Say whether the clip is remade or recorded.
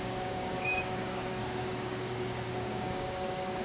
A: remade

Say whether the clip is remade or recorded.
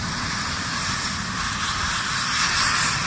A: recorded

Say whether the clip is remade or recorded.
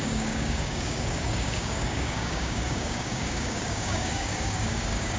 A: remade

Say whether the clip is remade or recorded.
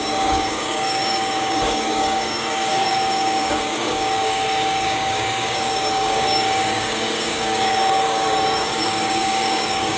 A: remade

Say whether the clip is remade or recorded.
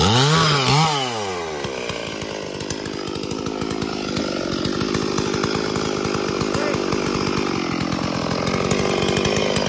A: recorded